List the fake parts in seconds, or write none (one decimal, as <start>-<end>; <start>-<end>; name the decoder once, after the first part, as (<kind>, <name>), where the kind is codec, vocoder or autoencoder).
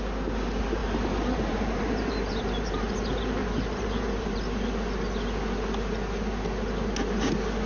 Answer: 0.8-4.4 (vocoder, BigVGAN v2)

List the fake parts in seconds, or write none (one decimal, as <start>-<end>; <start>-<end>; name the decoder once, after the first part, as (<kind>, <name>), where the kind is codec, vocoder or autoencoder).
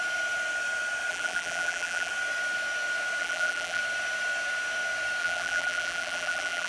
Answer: 1.1-2.1 (vocoder, BigVGAN v2); 3.2-3.8; 5.2-6.7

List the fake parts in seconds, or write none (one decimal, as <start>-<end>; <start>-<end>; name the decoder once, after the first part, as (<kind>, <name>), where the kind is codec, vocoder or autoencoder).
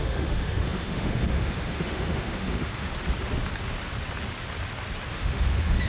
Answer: 0.0-2.9 (autoencoder, DAC-VAE); 5.1-5.9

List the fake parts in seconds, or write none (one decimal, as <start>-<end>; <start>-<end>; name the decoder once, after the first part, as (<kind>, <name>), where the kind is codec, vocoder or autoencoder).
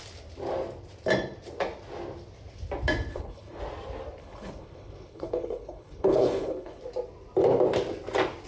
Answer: 3.1-3.6 (codec, HILCodec); 4.2-6.8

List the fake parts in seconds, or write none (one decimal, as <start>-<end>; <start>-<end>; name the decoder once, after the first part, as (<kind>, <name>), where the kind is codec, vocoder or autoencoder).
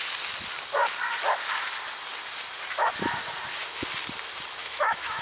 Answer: 4.6-5.2 (autoencoder, DAC-VAE)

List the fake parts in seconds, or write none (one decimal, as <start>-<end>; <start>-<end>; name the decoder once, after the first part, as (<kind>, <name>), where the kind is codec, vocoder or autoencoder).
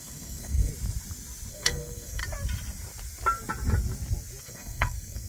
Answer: 0.0-0.7 (codec, SNAC); 1.5-2.2; 4.4-5.3